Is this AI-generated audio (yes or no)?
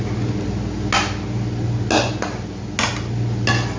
no